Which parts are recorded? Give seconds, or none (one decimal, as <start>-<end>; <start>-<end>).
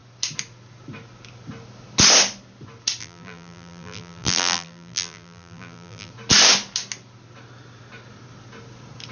0.0-3.0; 6.1-9.1